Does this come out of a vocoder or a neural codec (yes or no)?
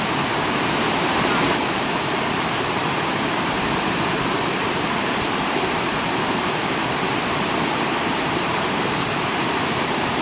yes